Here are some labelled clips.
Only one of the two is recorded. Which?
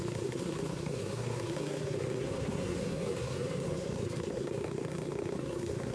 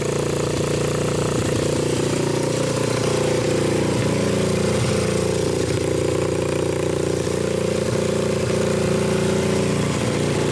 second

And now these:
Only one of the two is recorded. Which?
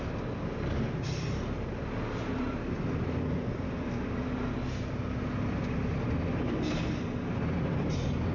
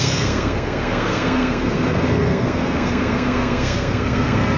first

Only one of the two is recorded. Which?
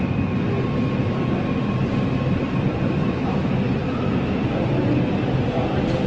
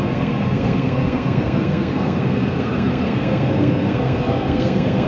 first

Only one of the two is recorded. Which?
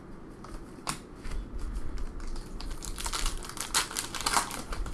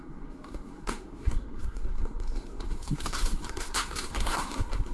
first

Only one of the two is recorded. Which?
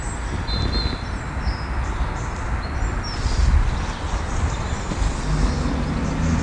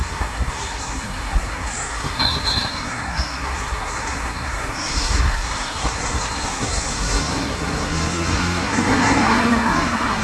first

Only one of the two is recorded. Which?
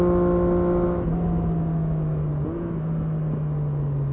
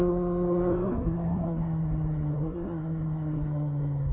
first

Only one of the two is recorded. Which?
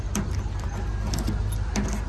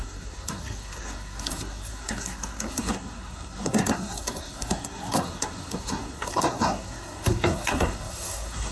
first